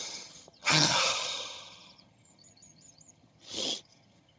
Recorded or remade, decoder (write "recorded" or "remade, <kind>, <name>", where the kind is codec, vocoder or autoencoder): remade, vocoder, HiFi-GAN